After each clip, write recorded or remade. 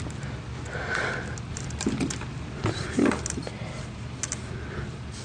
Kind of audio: recorded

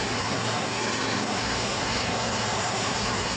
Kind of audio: remade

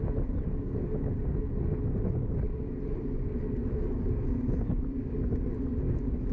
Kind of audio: recorded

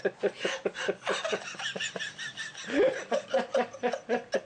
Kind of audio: recorded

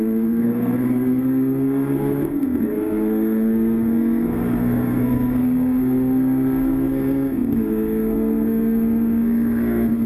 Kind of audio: remade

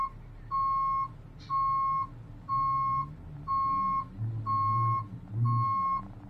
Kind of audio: recorded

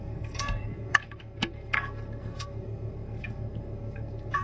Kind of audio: remade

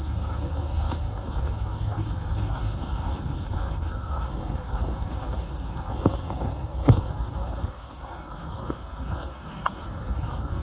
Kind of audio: remade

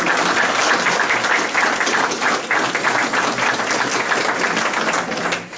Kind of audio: recorded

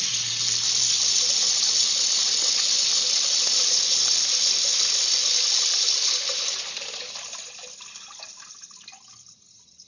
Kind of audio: recorded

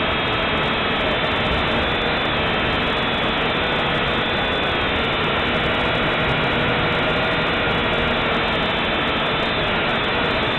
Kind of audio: recorded